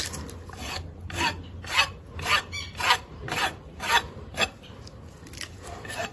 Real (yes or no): yes